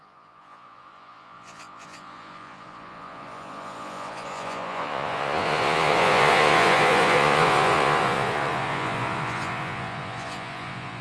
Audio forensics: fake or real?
fake